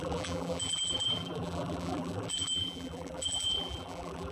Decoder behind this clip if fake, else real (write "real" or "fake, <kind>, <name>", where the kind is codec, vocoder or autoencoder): fake, vocoder, BigVGAN v2